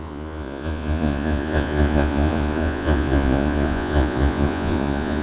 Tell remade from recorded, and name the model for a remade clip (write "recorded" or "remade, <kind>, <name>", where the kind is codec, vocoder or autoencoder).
remade, vocoder, Vocos